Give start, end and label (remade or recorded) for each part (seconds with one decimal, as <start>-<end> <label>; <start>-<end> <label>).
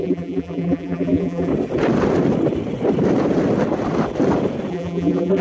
0.0-1.5 remade; 1.5-4.7 recorded; 4.7-5.4 remade